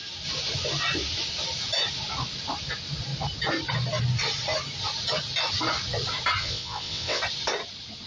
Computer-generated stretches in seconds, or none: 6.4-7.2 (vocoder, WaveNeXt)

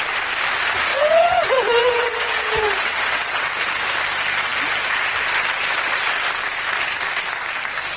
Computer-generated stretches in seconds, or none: 0.9-3.4 (vocoder, WaveNeXt)

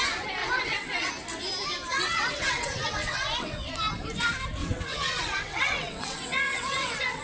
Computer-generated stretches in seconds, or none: 0.4-1.1 (vocoder, WaveNeXt); 1.9-3.7; 4.6-7.2

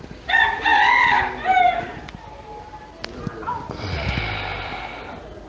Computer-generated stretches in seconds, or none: none